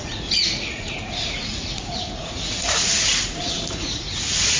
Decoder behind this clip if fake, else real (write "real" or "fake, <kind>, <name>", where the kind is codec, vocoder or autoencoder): fake, vocoder, Vocos